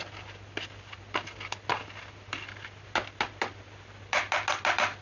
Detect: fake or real real